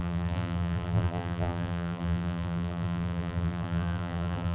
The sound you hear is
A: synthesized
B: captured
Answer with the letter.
A